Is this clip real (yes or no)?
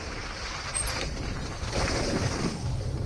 yes